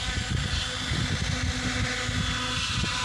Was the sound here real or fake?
real